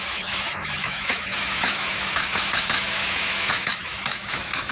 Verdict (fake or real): fake